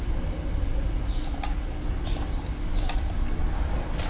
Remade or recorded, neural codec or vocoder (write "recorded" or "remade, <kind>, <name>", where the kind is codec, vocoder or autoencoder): recorded